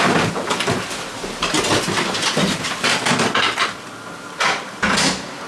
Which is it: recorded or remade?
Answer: recorded